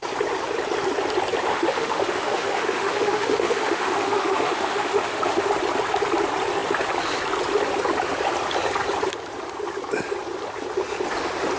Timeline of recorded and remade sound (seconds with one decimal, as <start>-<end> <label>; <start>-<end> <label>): 0.0-1.5 recorded; 1.5-5.5 remade; 5.5-11.6 recorded